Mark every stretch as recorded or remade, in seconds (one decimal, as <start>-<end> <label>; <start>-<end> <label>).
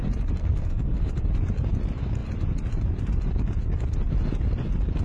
0.0-0.4 recorded; 0.4-1.0 remade; 1.0-5.0 recorded